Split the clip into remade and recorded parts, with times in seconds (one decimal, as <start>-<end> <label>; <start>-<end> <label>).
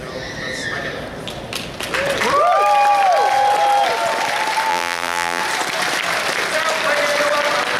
0.0-4.7 recorded; 4.7-5.4 remade; 5.4-7.8 recorded